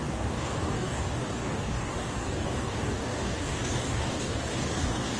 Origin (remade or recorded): remade